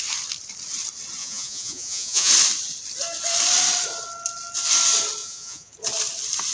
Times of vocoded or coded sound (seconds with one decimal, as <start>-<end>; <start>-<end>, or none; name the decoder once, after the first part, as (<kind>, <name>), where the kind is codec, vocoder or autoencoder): 1.2-2.3 (vocoder, Vocos); 5.2-5.7